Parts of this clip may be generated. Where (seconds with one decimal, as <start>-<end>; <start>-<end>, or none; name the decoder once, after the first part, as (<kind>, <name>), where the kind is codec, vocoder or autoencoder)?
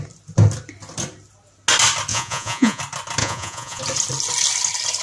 2.1-2.8 (vocoder, Vocos); 3.2-3.8